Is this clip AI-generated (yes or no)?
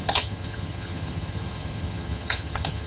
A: yes